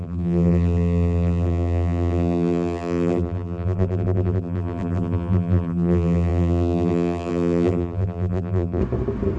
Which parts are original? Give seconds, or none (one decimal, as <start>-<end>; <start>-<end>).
8.8-9.4